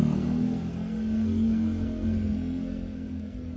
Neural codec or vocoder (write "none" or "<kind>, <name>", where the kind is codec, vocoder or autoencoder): codec, SNAC